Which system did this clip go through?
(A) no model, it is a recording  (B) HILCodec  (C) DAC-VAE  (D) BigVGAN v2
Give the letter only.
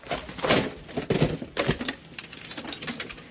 A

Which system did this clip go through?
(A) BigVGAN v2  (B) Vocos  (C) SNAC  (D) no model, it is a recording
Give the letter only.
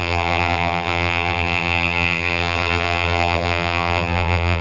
A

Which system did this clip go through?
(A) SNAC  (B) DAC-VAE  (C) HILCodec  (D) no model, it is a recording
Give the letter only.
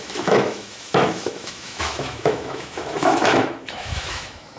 B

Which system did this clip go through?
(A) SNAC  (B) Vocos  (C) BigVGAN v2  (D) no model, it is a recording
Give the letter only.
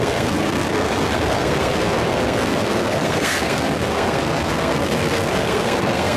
A